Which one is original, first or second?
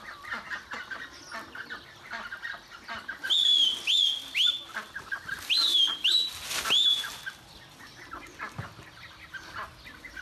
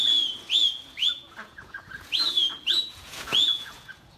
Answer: first